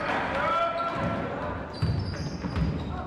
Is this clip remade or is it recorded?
recorded